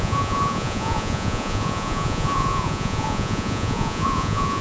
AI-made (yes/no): yes